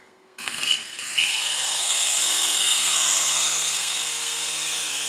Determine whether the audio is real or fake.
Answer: fake